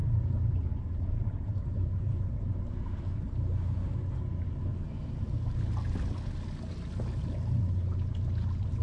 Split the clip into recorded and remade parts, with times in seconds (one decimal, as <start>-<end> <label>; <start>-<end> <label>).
0.0-3.0 remade; 3.0-8.8 recorded